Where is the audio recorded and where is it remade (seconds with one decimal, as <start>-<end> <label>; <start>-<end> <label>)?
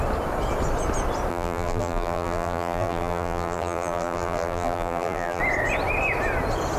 0.0-1.3 recorded; 1.3-5.4 remade; 5.4-6.8 recorded